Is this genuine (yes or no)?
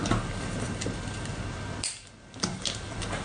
yes